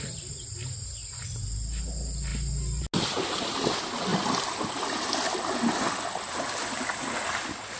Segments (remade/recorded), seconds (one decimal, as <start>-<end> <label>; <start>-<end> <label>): 0.0-7.8 recorded